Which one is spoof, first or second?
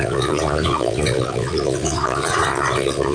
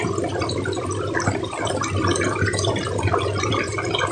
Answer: first